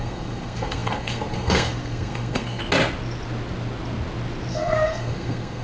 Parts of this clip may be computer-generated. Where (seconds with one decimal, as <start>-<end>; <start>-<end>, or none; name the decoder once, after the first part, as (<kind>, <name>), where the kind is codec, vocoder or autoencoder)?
0.0-2.6 (codec, SNAC); 4.5-5.6